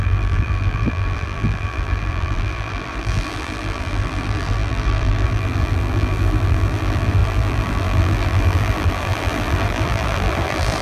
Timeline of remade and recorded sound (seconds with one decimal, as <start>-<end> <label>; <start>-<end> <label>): 0.0-10.8 remade